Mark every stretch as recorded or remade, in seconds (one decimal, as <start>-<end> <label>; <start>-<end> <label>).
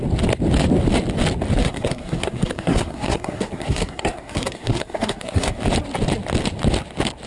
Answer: 0.0-1.6 recorded; 1.6-5.6 remade; 5.6-7.3 recorded